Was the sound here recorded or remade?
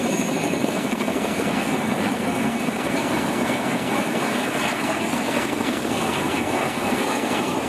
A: remade